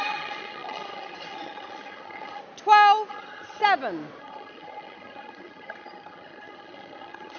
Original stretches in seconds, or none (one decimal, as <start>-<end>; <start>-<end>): 2.4-3.1; 3.6-4.2